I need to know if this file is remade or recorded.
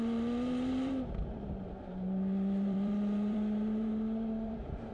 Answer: remade